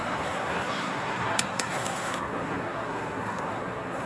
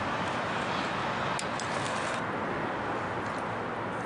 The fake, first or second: first